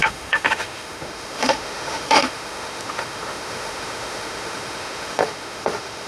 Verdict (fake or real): fake